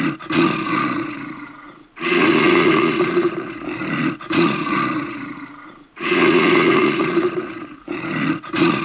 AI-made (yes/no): yes